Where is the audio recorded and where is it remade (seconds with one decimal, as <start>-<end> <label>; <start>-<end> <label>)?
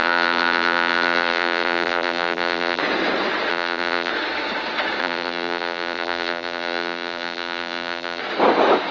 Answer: 0.0-2.8 remade; 2.8-3.5 recorded; 3.5-4.1 remade; 4.1-5.0 recorded; 5.0-8.2 remade; 8.2-8.9 recorded